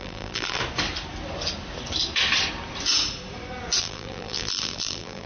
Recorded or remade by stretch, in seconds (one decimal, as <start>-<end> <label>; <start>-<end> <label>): 0.0-0.6 remade; 0.6-3.8 recorded; 3.8-5.3 remade